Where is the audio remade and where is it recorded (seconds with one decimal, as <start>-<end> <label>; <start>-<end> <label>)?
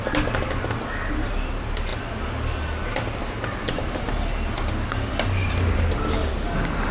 0.0-6.9 recorded